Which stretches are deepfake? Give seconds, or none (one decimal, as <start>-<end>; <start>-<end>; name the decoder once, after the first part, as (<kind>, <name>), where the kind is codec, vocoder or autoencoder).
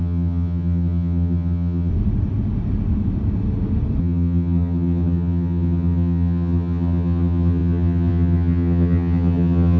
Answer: 0.0-1.9 (vocoder, HiFi-GAN); 4.0-9.8